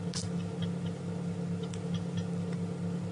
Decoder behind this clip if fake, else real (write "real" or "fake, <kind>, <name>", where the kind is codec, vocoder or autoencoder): real